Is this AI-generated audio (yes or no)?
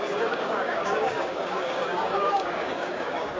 yes